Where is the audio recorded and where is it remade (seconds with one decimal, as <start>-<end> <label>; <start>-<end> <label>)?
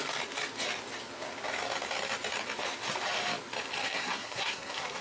0.0-3.8 recorded; 3.8-5.0 remade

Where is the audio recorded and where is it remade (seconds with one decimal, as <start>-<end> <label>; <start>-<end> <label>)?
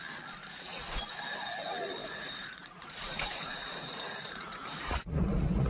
0.0-0.4 recorded; 0.4-1.2 remade; 1.2-2.0 recorded; 2.0-5.7 remade